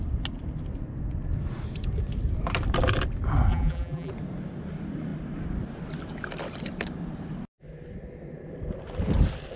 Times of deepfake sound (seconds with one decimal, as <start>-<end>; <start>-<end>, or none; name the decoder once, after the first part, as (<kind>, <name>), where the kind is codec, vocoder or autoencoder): 3.5-4.1 (vocoder, BigVGAN v2)